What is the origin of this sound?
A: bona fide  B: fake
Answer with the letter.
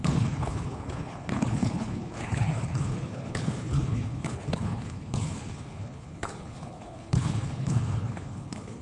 B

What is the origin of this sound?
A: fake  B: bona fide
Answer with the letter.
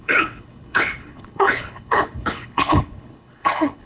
A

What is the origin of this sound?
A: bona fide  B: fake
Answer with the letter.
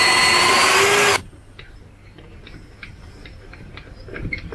A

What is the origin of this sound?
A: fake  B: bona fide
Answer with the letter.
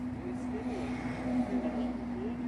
B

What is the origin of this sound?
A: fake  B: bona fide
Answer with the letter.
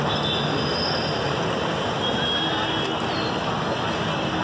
B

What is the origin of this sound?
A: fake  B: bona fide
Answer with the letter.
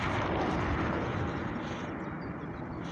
B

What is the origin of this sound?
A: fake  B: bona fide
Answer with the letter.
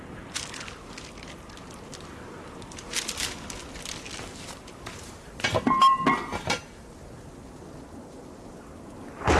B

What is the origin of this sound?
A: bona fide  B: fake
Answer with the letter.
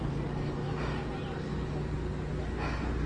A